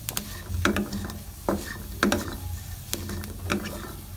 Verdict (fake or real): real